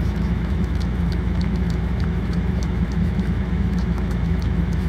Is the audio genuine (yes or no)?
no